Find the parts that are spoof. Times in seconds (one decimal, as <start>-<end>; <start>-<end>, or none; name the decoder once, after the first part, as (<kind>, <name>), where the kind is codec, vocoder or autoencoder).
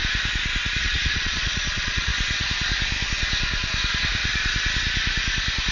0.8-2.1 (vocoder, Vocos)